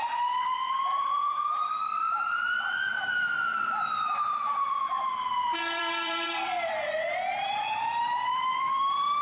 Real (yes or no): no